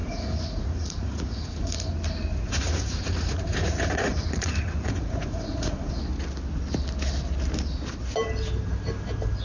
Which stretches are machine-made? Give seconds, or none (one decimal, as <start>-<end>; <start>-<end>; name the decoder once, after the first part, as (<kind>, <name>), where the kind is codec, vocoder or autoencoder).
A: 0.0-1.9 (vocoder, Vocos); 2.3-6.0